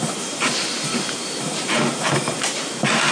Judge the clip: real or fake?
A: fake